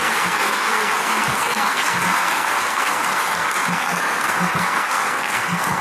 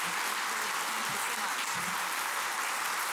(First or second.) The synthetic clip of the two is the first